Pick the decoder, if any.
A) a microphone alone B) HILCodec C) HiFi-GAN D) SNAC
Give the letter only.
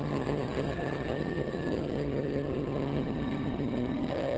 C